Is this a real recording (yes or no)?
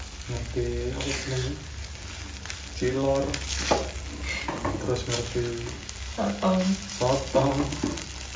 yes